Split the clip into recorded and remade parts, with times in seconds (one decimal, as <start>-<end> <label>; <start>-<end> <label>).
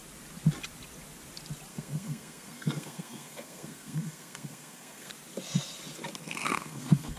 0.0-1.7 recorded; 1.7-5.1 remade; 5.1-6.2 recorded; 6.2-7.2 remade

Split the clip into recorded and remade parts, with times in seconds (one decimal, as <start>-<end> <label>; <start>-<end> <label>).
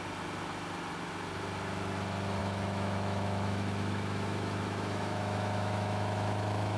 0.0-2.4 recorded; 2.4-6.8 remade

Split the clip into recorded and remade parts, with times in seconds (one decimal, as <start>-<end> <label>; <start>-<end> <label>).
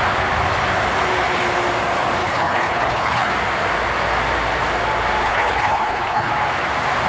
0.0-2.2 recorded; 2.2-3.3 remade; 3.3-5.2 recorded; 5.2-6.3 remade; 6.3-7.1 recorded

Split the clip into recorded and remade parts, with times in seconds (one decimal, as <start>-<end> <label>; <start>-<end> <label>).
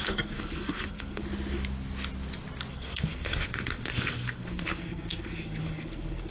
0.0-1.2 remade; 1.2-2.7 recorded; 2.7-6.3 remade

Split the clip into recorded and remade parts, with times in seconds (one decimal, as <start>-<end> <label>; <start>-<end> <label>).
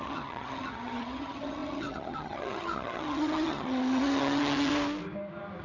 0.0-4.7 remade; 4.7-5.6 recorded